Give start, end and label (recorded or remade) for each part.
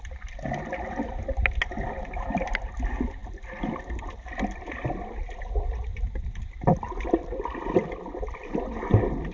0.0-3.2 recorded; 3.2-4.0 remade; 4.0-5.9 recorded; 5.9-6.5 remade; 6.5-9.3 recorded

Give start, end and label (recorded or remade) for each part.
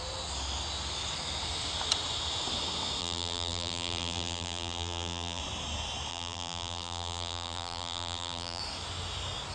0.0-3.0 recorded; 3.0-5.4 remade; 5.4-6.1 recorded; 6.1-8.6 remade; 8.6-9.5 recorded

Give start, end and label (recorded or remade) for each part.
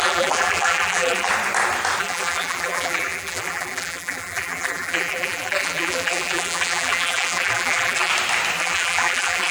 0.0-1.3 remade; 1.3-2.0 recorded; 2.0-8.1 remade; 8.1-8.6 recorded; 8.6-9.5 remade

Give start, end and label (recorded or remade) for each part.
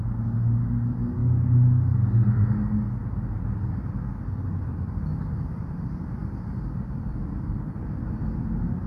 0.0-6.2 recorded; 6.2-7.9 remade; 7.9-8.9 recorded